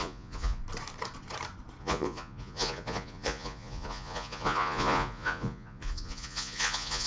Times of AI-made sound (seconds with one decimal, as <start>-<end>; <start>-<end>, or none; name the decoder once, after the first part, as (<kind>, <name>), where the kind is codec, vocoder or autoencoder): 0.0-0.6 (vocoder, Vocos); 1.8-7.1